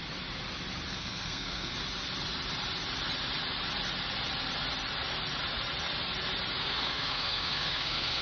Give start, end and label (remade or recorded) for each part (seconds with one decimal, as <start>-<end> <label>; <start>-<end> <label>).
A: 0.0-0.9 recorded; 0.9-1.7 remade; 1.7-6.6 recorded; 6.6-8.2 remade